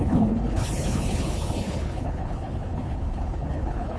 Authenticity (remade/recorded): remade